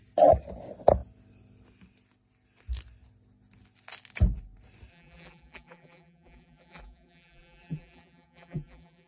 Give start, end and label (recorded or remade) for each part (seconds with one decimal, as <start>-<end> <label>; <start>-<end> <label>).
0.0-4.9 recorded; 4.9-9.1 remade